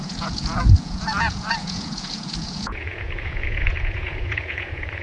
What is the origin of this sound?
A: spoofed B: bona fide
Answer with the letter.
A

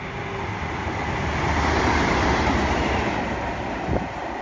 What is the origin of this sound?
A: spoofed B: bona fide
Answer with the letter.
B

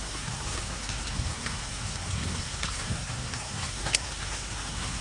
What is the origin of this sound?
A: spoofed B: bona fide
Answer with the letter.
A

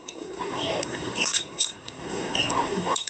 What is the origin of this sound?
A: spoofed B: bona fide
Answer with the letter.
A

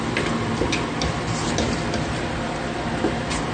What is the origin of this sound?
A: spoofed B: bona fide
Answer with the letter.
B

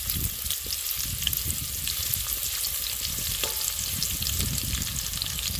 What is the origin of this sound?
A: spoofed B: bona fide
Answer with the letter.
B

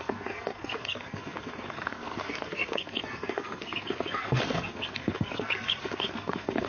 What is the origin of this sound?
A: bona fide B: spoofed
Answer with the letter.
B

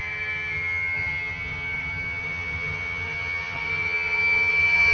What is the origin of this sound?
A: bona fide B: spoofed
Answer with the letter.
B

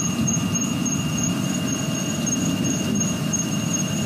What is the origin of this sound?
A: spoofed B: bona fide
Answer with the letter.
A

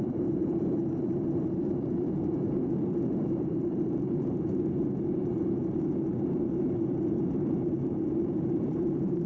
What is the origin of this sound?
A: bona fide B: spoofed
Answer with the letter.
B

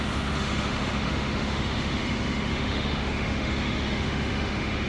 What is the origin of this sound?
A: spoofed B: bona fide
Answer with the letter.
A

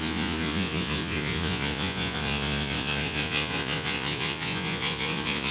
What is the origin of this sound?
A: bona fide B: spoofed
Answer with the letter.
B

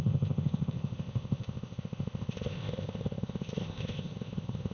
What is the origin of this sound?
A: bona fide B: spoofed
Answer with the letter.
B